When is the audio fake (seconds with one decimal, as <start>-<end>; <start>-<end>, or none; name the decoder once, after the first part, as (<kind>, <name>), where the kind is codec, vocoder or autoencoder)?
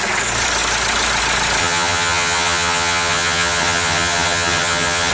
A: 1.6-5.1 (vocoder, HiFi-GAN)